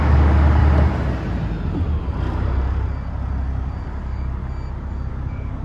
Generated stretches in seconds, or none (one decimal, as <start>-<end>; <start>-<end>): 0.0-0.6; 4.0-4.4; 5.1-5.6